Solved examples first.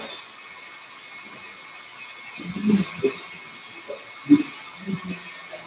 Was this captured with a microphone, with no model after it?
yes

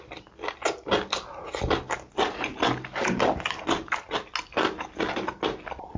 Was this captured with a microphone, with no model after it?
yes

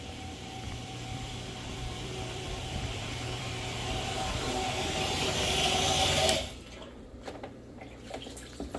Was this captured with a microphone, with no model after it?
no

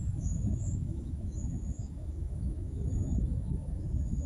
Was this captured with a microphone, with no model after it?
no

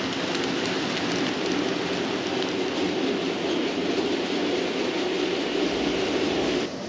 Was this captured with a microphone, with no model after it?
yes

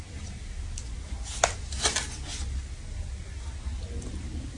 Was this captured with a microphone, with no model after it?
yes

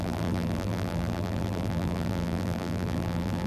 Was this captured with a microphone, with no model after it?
no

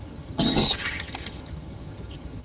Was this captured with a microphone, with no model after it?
no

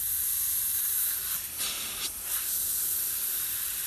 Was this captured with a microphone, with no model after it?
yes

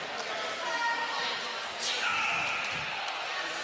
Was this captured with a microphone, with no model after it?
yes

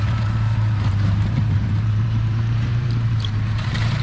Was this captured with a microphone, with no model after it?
no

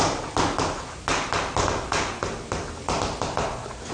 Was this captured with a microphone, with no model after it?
yes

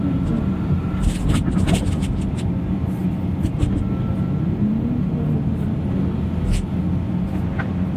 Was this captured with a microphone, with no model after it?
yes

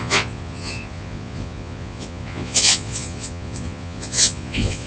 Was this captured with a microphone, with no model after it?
no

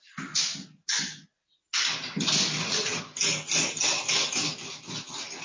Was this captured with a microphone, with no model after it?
yes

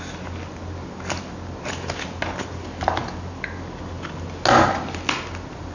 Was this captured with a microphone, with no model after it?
yes